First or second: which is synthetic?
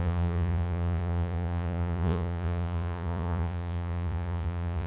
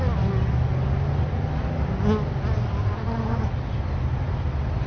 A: first